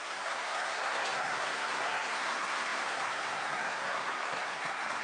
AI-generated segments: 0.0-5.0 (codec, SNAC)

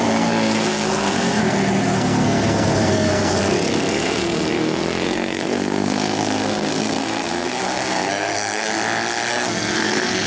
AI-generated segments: 0.0-8.7 (codec, SNAC); 9.3-10.3

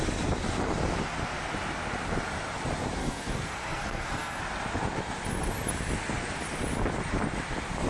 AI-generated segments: 3.0-4.4 (codec, SNAC)

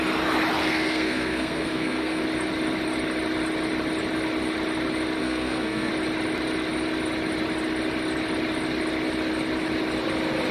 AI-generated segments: 0.6-2.2 (codec, SNAC); 5.2-5.9

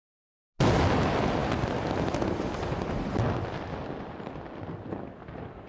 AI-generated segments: none

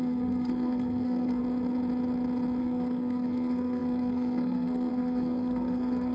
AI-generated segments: 0.0-1.4 (codec, SNAC); 2.6-6.1

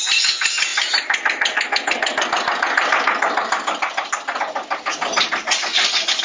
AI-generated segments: none

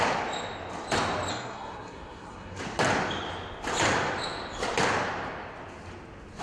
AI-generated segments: 1.3-2.6 (codec, SNAC)